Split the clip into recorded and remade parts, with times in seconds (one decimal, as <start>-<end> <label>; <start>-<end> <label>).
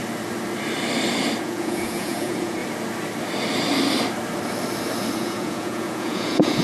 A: 0.0-1.4 recorded; 1.4-2.6 remade; 2.6-5.1 recorded; 5.1-6.6 remade